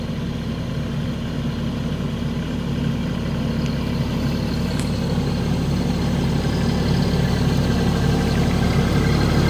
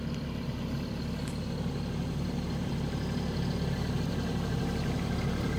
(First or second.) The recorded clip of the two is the first